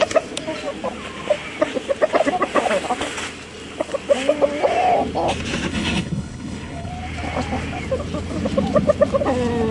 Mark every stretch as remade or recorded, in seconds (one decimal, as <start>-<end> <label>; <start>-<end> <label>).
0.0-5.7 recorded; 5.7-6.9 remade; 6.9-9.7 recorded